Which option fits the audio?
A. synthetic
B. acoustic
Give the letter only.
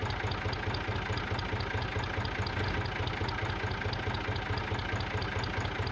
B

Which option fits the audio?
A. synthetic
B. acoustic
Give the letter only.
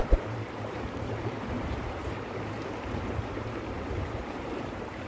A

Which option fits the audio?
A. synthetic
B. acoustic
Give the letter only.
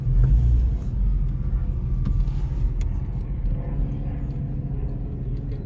B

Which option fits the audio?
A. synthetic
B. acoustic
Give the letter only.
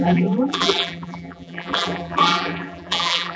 A